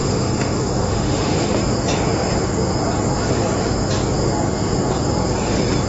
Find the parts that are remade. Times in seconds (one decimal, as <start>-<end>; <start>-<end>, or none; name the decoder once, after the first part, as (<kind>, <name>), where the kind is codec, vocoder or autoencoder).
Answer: 0.0-1.6 (autoencoder, DAC-VAE)